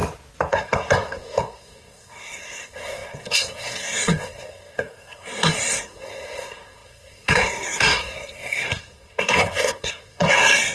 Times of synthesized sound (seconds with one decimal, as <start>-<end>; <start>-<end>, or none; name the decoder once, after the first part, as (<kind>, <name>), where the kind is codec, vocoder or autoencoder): 0.5-10.7 (codec, SNAC)